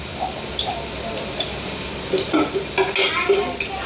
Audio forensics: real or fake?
real